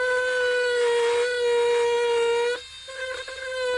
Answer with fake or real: real